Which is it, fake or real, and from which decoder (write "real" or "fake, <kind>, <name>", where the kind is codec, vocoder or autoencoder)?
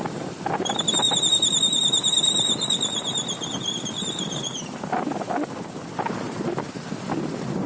real